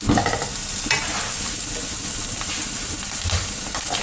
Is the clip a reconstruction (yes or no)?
no